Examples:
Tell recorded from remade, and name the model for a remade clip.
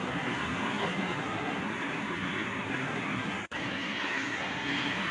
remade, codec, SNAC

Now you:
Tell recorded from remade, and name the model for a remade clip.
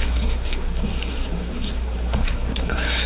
remade, codec, SNAC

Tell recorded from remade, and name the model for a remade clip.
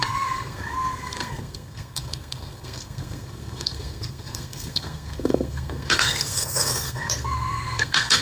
remade, codec, SNAC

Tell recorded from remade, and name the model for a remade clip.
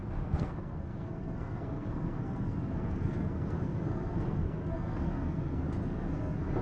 remade, codec, SNAC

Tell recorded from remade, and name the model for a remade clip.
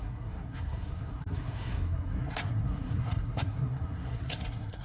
remade, codec, SNAC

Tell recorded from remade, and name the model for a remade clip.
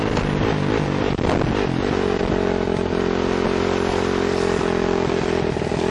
recorded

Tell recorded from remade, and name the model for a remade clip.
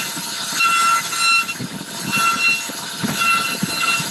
recorded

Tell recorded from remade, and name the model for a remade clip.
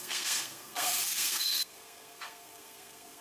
remade, codec, SNAC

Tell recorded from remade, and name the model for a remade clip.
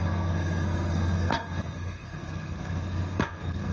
remade, codec, SNAC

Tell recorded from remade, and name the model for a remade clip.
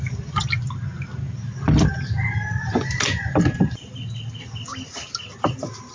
recorded